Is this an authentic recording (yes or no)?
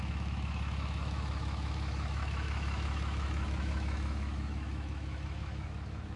no